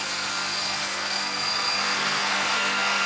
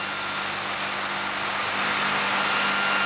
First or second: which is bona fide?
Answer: second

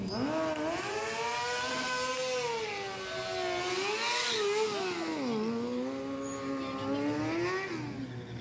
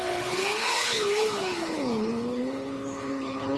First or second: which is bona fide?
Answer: first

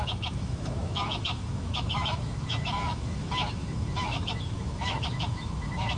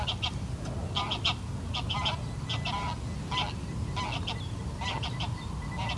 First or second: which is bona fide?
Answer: second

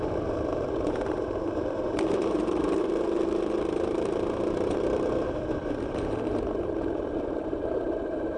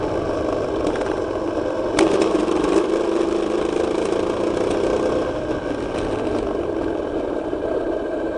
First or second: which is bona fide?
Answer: second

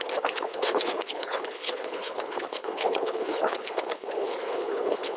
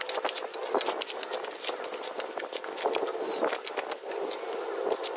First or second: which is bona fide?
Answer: second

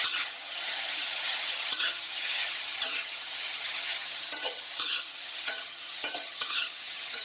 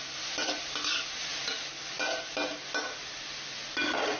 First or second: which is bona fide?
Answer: second